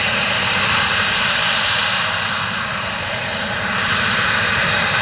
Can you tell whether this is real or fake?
fake